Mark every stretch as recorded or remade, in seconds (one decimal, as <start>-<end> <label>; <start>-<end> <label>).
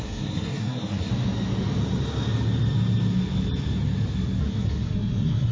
0.0-1.1 remade; 1.1-4.4 recorded; 4.4-5.5 remade